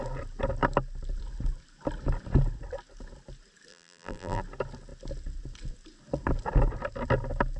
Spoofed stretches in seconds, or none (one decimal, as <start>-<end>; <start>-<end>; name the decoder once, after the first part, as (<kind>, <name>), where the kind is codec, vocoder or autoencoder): 3.7-4.4 (vocoder, BigVGAN v2)